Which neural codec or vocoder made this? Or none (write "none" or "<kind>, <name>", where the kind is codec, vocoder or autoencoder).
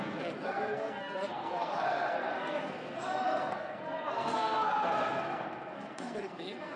codec, SNAC